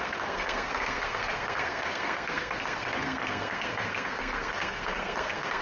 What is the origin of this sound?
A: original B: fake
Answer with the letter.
B